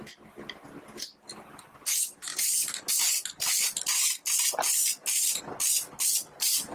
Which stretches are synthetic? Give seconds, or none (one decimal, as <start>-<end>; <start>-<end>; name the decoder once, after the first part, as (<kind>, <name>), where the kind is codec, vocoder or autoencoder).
2.3-2.9 (vocoder, BigVGAN v2); 4.8-5.4